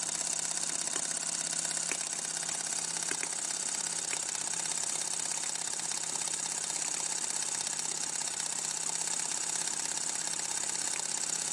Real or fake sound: real